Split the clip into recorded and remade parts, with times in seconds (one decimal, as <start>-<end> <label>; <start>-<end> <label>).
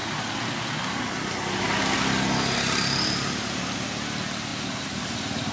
0.0-5.5 recorded